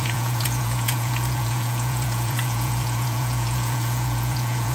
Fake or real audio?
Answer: fake